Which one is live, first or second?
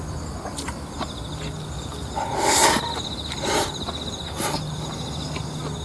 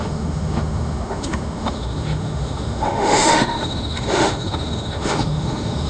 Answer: first